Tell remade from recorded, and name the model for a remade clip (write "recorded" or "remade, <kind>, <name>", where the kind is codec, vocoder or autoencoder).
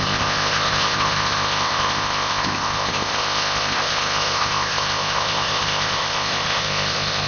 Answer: remade, codec, ZipCodec